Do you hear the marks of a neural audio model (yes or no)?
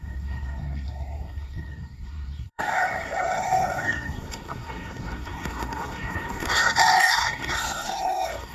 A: yes